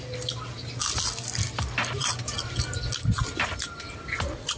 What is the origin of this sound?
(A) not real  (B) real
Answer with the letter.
B